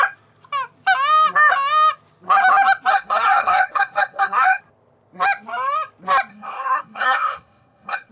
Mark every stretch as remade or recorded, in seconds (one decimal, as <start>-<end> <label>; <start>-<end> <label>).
0.0-2.9 recorded; 2.9-4.6 remade; 4.6-6.3 recorded; 6.3-8.1 remade